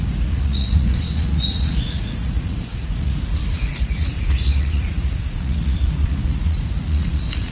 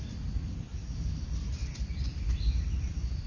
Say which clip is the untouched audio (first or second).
second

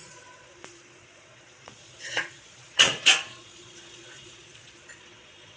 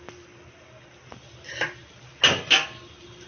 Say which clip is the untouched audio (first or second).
second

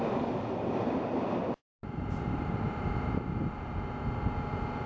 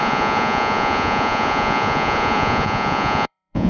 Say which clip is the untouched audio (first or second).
first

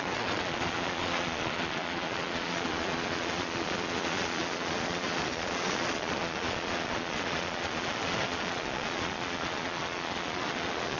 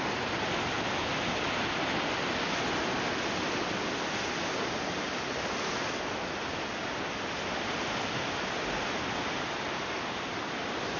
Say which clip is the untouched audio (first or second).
second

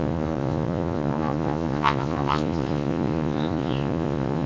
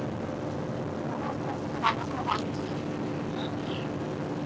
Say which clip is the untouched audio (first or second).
second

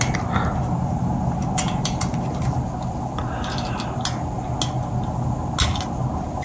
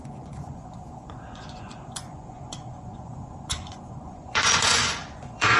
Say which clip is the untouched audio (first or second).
first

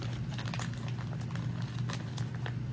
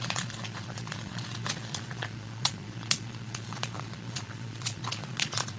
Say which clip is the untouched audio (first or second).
first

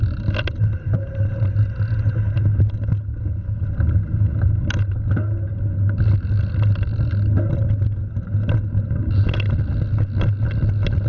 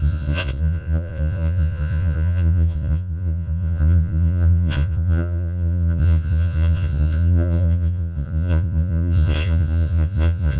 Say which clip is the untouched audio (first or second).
first